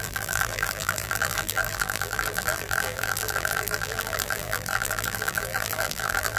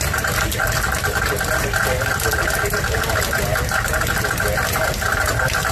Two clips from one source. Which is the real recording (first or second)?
second